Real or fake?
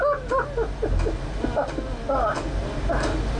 real